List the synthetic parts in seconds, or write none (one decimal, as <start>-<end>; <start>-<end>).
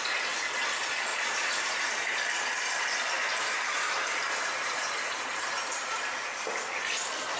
1.1-2.2; 3.3-6.6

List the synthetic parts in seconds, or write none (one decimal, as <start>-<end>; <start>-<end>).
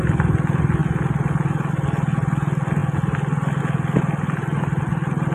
none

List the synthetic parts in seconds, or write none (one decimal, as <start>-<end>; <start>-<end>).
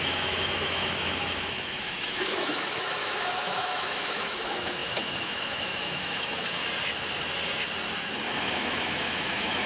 0.0-6.6; 8.4-9.7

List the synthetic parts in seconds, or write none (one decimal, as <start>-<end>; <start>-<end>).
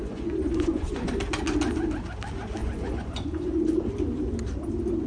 0.0-1.1; 2.6-3.6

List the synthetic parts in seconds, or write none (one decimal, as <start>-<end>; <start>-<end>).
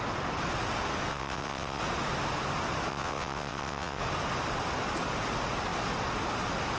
1.1-1.8; 2.9-4.0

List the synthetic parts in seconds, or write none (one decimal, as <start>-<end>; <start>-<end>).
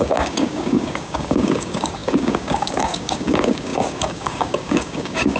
0.0-5.4